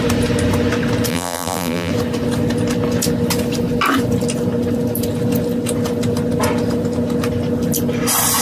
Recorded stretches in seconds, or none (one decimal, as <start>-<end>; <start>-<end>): 0.0-1.1; 1.9-8.4